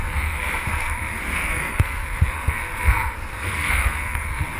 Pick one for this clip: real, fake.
fake